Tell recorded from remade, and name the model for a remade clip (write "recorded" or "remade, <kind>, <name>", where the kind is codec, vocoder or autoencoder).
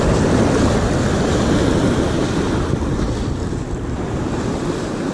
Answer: recorded